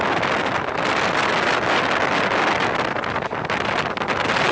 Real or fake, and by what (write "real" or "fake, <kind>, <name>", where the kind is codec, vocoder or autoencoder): real